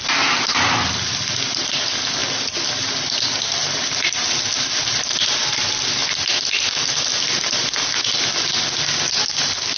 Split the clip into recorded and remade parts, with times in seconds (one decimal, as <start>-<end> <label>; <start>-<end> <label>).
0.0-2.2 recorded; 2.2-4.8 remade; 4.8-9.8 recorded